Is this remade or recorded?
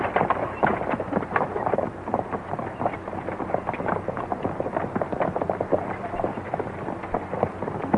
recorded